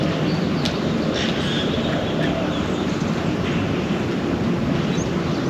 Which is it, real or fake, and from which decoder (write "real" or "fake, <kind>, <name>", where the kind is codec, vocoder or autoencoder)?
real